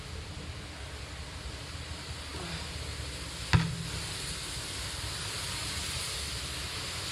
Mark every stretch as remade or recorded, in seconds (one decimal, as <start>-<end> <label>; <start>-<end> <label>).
0.0-7.1 recorded